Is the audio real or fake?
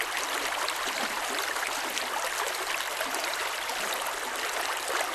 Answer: fake